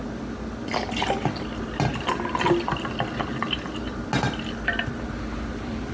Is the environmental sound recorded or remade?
recorded